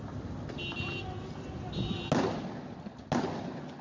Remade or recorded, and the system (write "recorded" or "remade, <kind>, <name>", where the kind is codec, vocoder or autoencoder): recorded